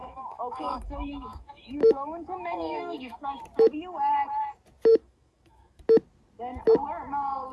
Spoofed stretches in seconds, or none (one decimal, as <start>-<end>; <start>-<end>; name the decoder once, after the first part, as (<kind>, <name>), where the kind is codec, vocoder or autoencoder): 0.0-3.4 (autoencoder, DAC-VAE); 4.9-5.8